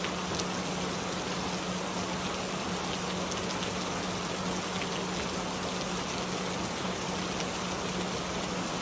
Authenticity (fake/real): real